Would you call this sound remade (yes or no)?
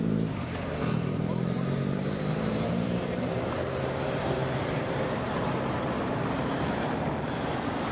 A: yes